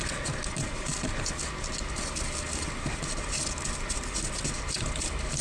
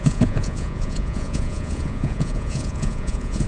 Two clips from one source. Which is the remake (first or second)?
second